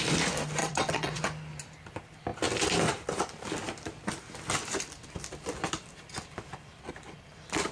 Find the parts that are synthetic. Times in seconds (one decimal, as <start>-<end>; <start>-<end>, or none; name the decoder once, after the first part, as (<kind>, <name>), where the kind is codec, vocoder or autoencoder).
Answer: 0.6-1.2 (vocoder, WaveNeXt)